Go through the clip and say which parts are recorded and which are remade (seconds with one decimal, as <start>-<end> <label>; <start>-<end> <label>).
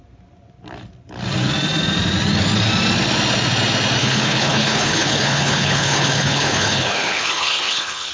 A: 0.0-4.0 recorded; 4.0-8.1 remade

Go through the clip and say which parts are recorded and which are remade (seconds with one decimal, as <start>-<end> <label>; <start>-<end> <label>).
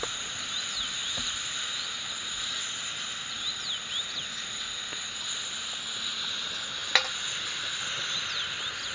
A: 0.0-8.9 recorded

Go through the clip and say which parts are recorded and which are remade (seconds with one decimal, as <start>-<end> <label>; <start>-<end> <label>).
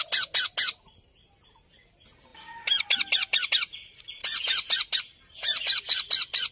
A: 0.0-6.5 recorded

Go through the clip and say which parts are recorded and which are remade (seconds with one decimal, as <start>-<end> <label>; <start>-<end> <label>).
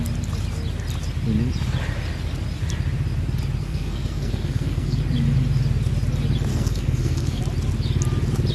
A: 0.0-3.6 recorded; 3.6-5.0 remade; 5.0-6.5 recorded; 6.5-7.4 remade; 7.4-8.5 recorded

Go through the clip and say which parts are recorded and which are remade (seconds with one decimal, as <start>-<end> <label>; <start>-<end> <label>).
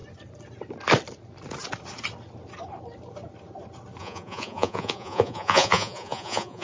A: 0.0-4.0 recorded; 4.0-6.6 remade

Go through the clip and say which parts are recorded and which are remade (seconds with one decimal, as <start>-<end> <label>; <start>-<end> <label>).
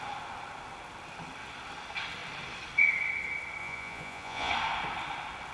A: 0.0-3.6 recorded; 3.6-4.5 remade; 4.5-5.5 recorded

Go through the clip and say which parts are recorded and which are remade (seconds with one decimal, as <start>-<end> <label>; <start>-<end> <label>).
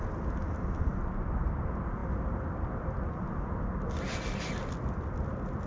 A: 0.0-5.7 recorded